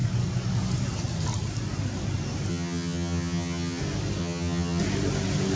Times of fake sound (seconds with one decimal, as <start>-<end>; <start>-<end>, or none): 2.5-3.8; 4.2-4.8